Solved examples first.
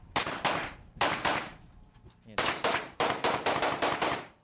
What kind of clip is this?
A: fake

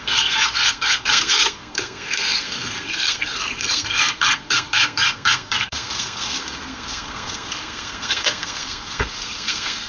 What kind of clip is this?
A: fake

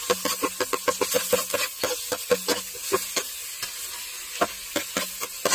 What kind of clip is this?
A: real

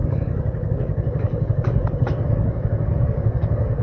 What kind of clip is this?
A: fake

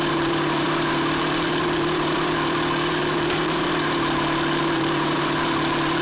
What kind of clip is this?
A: fake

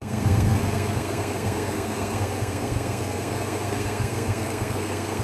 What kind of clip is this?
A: fake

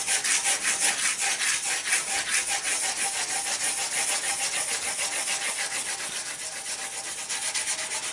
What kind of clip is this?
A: real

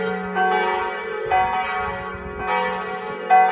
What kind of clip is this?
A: real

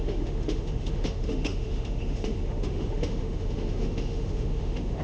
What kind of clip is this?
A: fake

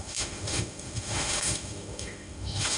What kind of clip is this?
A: fake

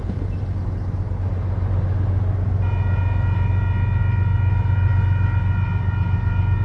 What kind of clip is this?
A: real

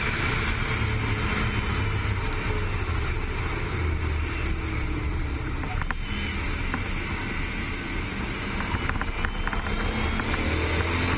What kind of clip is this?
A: real